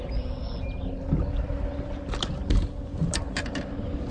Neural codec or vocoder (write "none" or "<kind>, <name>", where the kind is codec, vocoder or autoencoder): none